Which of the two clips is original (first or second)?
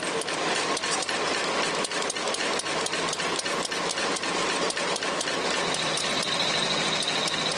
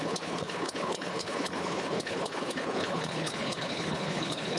first